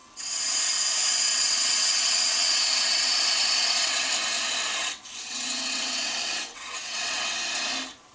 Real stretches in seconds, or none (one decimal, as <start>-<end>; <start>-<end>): 0.7-1.3; 3.1-3.6; 4.1-4.8; 7.2-8.1